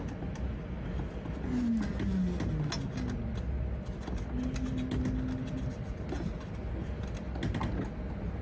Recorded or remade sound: recorded